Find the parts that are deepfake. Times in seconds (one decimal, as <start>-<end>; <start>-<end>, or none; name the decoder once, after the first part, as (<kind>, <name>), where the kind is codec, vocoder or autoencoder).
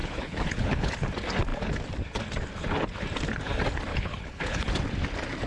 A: 0.0-0.9 (codec, HILCodec); 3.9-4.7